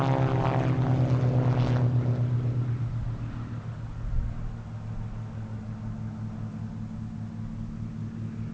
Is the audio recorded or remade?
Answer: recorded